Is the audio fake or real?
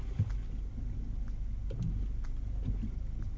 real